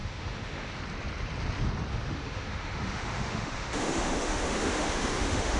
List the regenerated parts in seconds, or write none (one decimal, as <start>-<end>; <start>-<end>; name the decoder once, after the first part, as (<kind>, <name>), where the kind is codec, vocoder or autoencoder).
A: 0.0-0.8 (autoencoder, DAC-VAE); 1.9-5.6